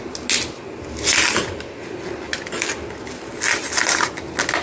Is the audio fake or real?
real